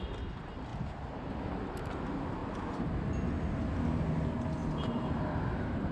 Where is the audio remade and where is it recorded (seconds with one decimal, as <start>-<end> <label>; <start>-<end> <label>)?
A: 0.0-0.7 recorded; 0.7-1.6 remade; 1.6-4.6 recorded; 4.6-5.9 remade